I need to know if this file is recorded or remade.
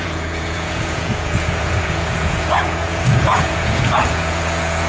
remade